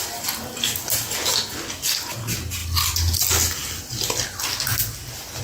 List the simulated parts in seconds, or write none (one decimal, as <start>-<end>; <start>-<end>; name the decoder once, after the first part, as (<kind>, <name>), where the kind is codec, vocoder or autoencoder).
none